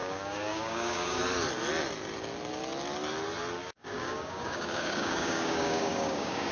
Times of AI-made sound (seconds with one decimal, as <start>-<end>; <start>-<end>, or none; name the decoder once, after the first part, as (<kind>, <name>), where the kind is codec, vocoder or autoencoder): 0.0-1.2 (codec, DAC); 3.6-6.5